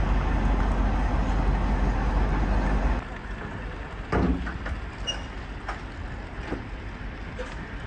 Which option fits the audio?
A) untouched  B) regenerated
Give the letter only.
A